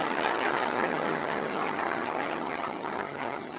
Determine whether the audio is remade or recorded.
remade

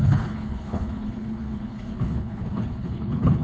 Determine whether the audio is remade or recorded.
remade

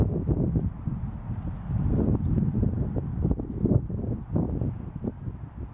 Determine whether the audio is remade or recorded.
recorded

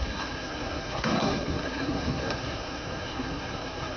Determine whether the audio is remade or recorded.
remade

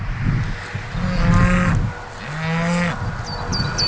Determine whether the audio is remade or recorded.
recorded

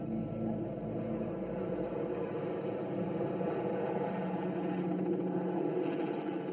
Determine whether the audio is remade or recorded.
recorded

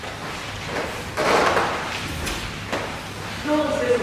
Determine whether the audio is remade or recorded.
recorded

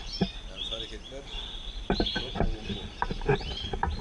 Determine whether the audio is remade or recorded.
recorded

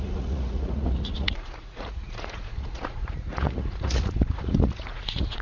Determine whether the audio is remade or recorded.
remade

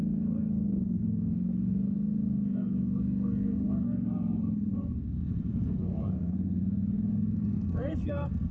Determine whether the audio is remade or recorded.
remade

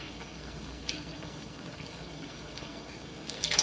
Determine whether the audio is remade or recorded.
remade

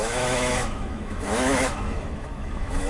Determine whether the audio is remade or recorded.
remade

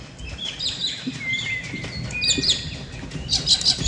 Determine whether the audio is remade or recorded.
recorded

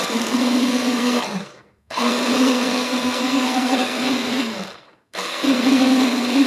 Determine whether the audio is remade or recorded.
remade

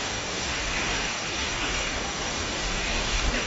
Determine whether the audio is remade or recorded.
remade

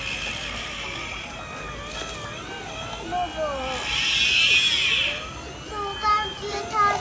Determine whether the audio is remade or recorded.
recorded